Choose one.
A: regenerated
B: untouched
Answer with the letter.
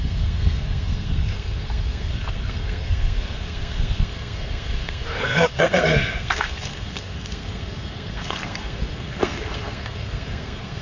A